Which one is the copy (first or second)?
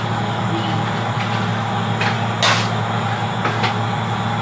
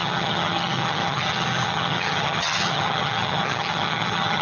second